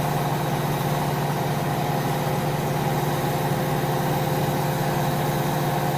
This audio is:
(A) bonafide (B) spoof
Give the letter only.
A